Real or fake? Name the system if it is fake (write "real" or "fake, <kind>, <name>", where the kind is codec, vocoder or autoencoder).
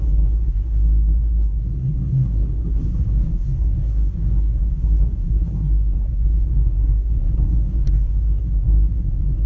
fake, codec, SNAC